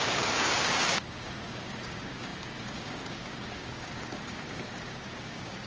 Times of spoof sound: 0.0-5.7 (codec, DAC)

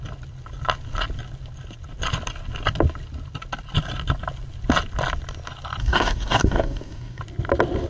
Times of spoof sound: 5.8-7.2 (codec, DAC)

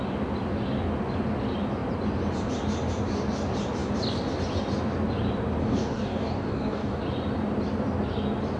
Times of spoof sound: 5.6-7.0 (codec, DAC)

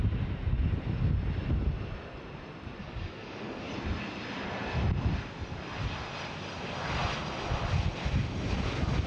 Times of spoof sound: 2.8-3.7 (codec, DAC)

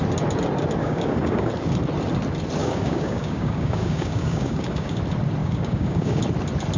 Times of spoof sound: 0.8-1.5 (codec, DAC); 2.6-5.0; 5.4-6.2